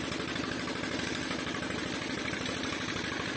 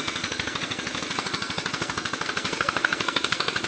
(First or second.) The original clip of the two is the first